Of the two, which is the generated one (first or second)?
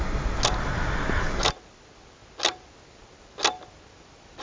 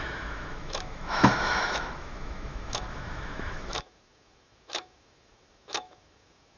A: second